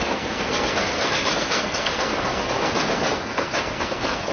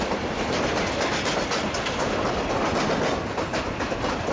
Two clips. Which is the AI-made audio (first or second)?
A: first